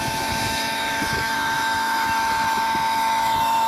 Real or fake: fake